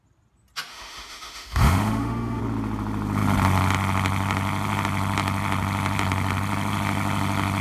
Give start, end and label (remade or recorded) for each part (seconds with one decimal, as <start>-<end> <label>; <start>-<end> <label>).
0.0-0.7 recorded; 0.7-2.4 remade; 2.4-7.6 recorded